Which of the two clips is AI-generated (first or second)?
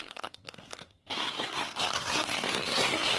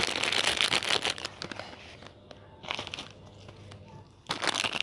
first